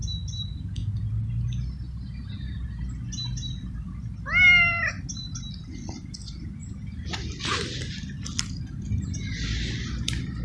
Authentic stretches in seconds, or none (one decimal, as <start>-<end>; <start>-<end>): 0.0-10.4